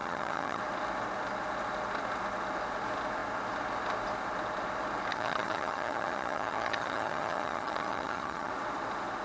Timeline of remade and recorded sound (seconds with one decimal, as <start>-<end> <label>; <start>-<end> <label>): 0.0-0.6 remade; 0.6-5.1 recorded; 5.1-8.5 remade; 8.5-9.2 recorded